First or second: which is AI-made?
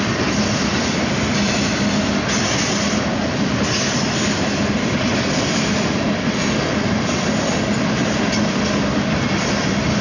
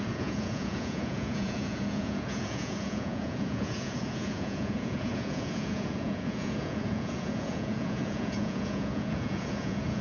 second